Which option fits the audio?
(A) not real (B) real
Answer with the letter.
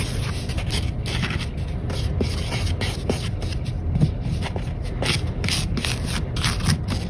B